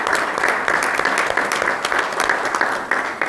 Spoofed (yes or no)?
no